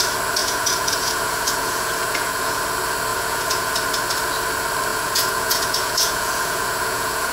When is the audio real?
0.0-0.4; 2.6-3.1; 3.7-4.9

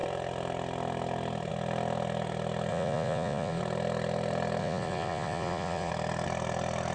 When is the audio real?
0.0-2.7; 3.6-4.6; 5.9-6.9

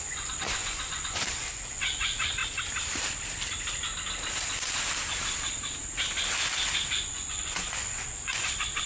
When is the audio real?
2.4-6.9

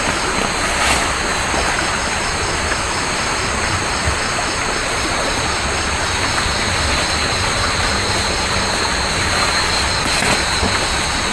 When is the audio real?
0.0-4.8; 5.4-7.2; 7.9-11.3

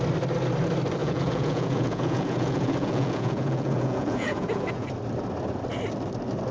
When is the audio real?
0.0-1.0; 4.9-6.5